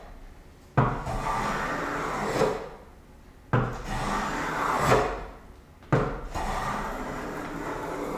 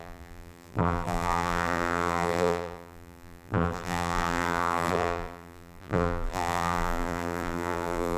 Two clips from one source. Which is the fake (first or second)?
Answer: second